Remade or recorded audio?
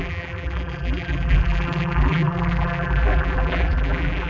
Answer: remade